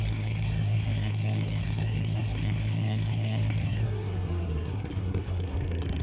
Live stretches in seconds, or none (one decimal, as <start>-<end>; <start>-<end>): none